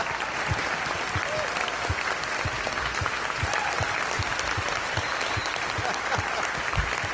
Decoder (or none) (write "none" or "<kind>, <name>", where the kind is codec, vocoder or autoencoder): none